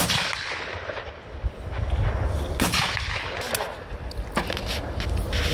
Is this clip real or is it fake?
real